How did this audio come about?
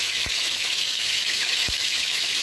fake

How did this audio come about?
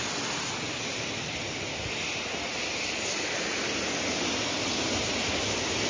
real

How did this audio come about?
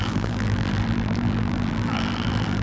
fake